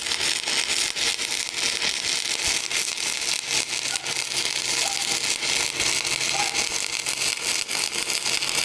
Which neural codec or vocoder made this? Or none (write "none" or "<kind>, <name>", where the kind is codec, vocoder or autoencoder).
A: none